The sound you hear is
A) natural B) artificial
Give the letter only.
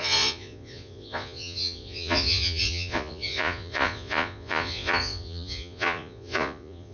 B